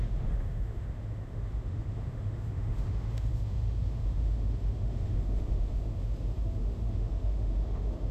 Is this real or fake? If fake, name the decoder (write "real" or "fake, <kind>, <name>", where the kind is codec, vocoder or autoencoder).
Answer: fake, autoencoder, DAC-VAE